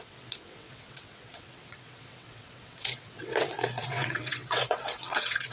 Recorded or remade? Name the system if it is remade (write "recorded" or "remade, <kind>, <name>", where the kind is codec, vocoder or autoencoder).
remade, vocoder, WaveNeXt